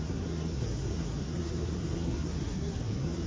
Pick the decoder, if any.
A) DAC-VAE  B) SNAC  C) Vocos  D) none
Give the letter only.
B